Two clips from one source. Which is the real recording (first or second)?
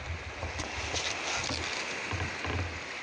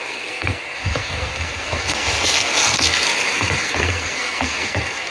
first